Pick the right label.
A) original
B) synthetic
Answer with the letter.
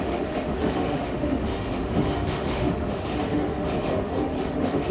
B